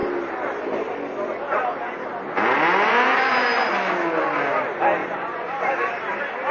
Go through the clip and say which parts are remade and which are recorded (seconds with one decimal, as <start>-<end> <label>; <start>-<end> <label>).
0.0-5.0 recorded; 5.0-5.7 remade; 5.7-6.5 recorded